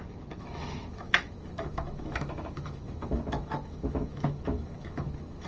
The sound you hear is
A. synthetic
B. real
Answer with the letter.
A